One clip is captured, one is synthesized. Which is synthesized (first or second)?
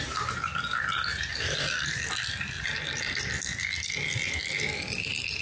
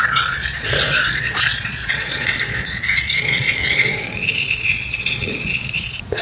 second